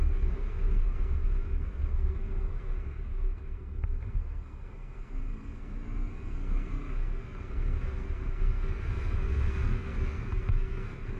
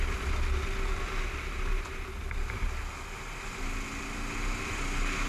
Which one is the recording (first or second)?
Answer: second